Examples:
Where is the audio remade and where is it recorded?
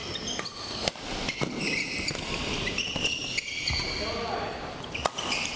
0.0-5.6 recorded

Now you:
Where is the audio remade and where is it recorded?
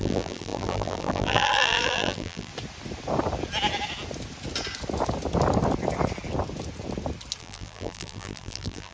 0.0-2.5 remade; 2.5-7.4 recorded; 7.4-8.9 remade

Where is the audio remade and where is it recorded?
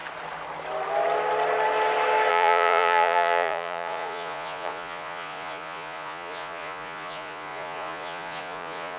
0.0-2.3 recorded; 2.3-9.0 remade